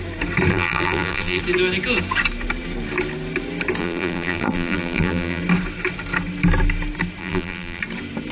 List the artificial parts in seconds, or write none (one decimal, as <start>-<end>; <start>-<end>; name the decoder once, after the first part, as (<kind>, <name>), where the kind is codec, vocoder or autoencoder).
0.5-1.4 (vocoder, BigVGAN v2); 3.8-5.4; 7.2-7.8